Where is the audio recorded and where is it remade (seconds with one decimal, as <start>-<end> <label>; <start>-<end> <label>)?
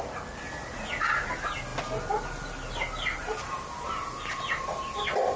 0.0-5.4 recorded